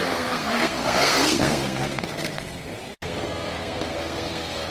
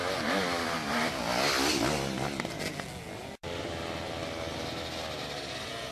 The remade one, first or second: first